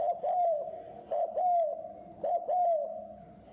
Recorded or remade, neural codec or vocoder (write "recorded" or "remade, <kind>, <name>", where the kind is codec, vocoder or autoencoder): recorded